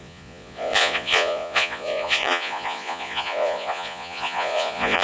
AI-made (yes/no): yes